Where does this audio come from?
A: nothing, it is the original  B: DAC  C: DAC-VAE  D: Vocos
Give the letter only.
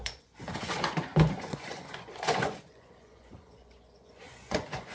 D